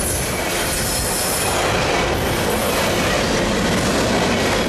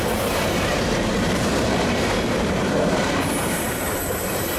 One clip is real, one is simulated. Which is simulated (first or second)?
second